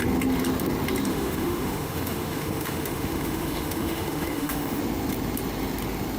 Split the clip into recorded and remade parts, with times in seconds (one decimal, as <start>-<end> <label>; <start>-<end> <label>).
0.0-1.1 recorded; 1.1-4.8 remade; 4.8-6.2 recorded